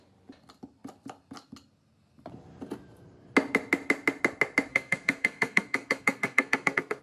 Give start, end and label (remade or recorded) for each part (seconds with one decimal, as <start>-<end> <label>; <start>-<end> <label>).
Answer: 0.0-4.7 recorded; 4.7-7.0 remade